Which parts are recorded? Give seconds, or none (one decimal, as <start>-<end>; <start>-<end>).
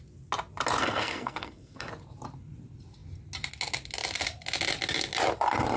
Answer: 0.0-0.8; 1.9-5.8